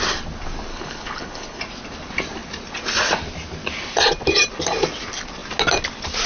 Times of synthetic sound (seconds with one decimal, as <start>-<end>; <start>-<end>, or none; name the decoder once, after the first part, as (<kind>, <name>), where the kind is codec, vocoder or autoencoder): 0.7-1.6 (codec, HILCodec)